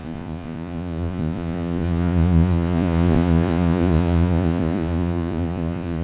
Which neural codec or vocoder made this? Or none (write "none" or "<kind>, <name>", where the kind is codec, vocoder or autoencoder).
vocoder, Vocos